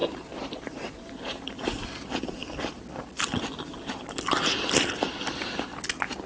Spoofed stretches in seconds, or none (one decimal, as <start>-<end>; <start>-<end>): 0.0-1.5